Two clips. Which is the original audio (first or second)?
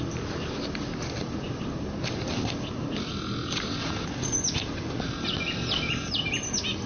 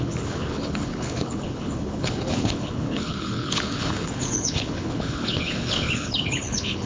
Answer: first